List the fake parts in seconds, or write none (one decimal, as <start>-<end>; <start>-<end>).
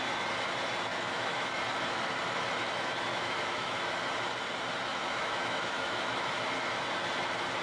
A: 0.9-1.6; 3.1-3.8; 4.9-6.4